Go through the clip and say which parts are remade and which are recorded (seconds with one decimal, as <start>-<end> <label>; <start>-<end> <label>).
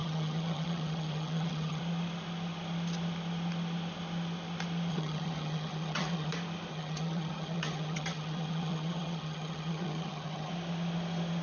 0.0-1.8 remade; 1.8-4.9 recorded; 4.9-6.3 remade; 6.3-6.7 recorded; 6.7-10.5 remade; 10.5-11.4 recorded